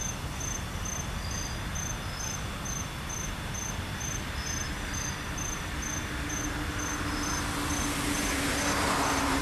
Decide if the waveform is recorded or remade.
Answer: recorded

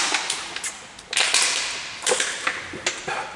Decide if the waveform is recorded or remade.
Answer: recorded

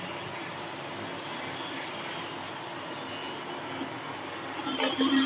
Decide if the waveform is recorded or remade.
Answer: recorded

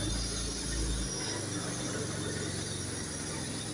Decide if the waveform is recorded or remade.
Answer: recorded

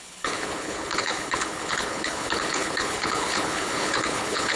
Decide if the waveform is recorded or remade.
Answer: remade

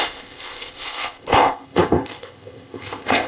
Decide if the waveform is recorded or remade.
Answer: remade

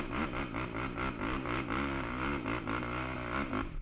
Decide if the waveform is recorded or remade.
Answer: recorded